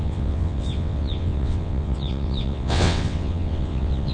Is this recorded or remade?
remade